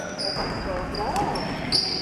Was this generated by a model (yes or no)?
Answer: no